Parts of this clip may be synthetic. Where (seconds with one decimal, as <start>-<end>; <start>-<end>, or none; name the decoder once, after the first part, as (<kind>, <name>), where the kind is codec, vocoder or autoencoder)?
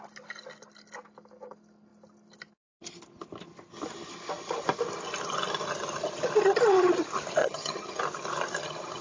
7.4-8.0 (vocoder, HiFi-GAN)